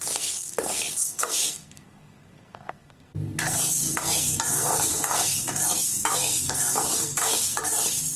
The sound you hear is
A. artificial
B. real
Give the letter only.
A